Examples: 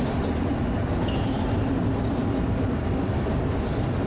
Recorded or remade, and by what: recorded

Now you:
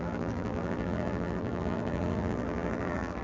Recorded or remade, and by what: remade, vocoder, BigVGAN v2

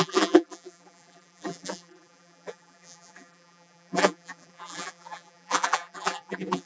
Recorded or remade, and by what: remade, vocoder, BigVGAN v2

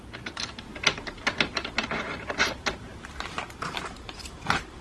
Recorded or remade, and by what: remade, vocoder, BigVGAN v2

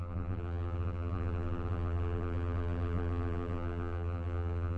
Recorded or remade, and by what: remade, vocoder, BigVGAN v2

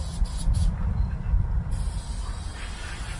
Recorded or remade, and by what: recorded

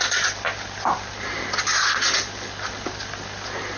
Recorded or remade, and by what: recorded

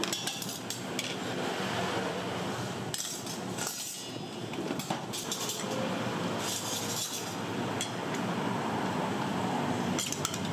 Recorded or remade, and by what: recorded